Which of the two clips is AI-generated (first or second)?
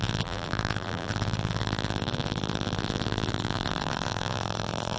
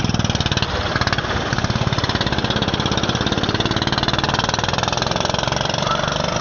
first